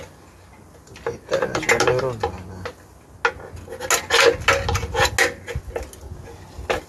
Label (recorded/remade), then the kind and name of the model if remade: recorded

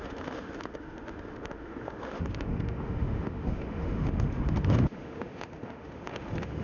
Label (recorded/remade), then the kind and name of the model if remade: remade, autoencoder, DAC-VAE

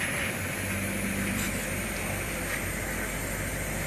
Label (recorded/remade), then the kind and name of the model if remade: recorded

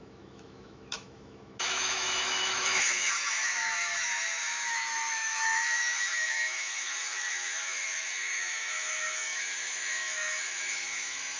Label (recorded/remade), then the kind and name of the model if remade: remade, autoencoder, DAC-VAE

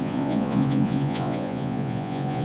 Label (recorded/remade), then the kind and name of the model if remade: remade, vocoder, Vocos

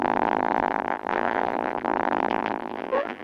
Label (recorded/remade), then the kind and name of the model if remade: remade, vocoder, BigVGAN v2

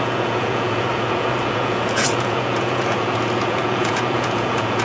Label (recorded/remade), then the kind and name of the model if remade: remade, vocoder, Vocos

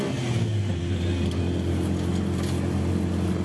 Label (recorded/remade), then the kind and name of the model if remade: recorded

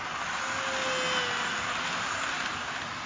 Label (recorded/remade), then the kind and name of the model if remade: recorded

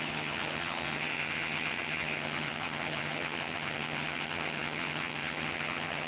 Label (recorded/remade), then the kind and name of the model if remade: remade, vocoder, HiFi-GAN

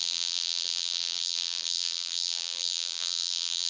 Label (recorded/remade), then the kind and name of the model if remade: remade, vocoder, BigVGAN v2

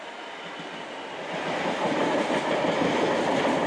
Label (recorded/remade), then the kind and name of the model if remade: recorded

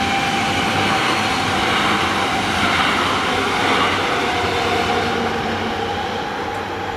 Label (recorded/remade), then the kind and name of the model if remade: recorded